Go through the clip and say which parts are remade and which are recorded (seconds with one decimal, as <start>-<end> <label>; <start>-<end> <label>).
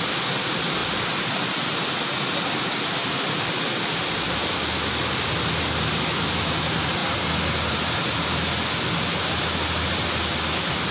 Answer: 0.0-10.9 recorded